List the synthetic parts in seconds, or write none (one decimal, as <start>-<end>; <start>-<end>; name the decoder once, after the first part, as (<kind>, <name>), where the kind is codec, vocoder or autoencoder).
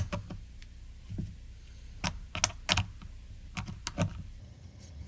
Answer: 4.4-5.1 (vocoder, HiFi-GAN)